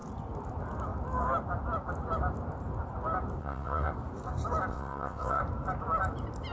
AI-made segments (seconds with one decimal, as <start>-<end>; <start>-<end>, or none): 3.4-3.9; 4.7-5.4